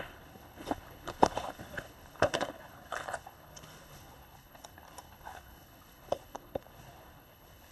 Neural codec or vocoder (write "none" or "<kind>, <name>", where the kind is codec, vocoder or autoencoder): codec, HILCodec